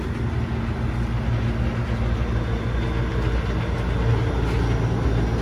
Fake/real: real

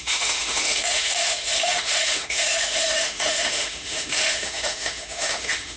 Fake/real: fake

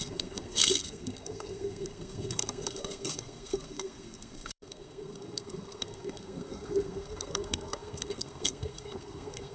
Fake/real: fake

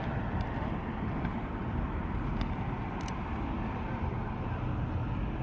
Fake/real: real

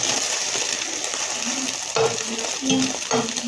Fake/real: real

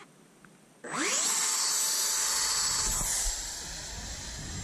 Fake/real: real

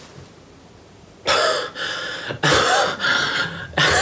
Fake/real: real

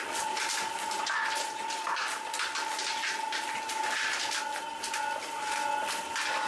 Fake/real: real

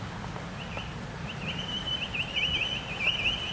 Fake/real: real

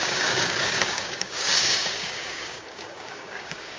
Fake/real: fake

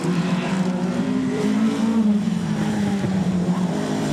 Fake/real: fake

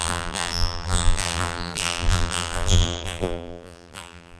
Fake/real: fake